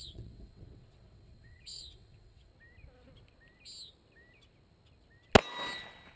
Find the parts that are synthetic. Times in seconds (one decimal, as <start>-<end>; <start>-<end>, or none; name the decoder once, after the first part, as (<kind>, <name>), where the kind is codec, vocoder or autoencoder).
0.0-2.5 (vocoder, WaveNeXt)